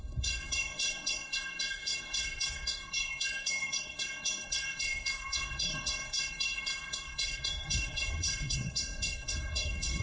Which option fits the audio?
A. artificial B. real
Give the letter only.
A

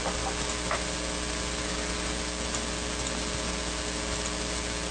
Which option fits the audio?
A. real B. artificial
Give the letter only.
A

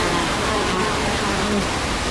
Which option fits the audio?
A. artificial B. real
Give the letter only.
B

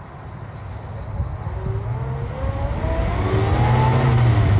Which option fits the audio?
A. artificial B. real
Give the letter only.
B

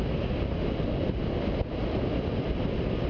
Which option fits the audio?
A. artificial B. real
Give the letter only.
B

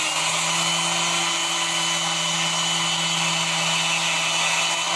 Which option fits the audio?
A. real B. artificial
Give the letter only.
A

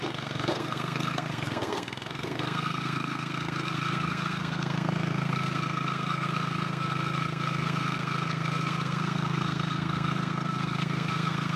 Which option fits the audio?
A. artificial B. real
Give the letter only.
A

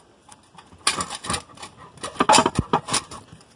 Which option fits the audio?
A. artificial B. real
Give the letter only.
B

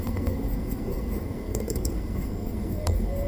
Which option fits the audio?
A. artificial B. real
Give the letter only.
A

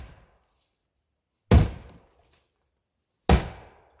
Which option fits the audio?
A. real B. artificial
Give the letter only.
A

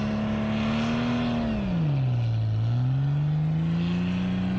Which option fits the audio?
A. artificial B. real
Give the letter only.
B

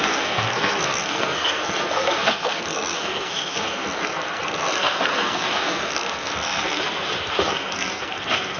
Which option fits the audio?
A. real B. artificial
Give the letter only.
B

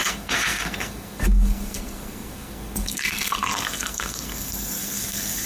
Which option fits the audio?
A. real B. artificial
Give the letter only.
B